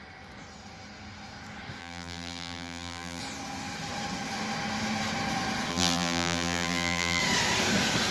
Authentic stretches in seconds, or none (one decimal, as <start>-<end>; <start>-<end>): 0.0-1.8; 3.2-5.7; 7.2-8.1